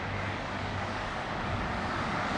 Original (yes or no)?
no